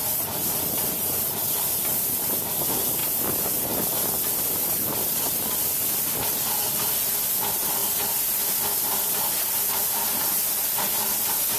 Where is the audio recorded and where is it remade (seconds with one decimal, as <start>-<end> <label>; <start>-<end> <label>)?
0.0-1.2 remade; 1.2-11.6 recorded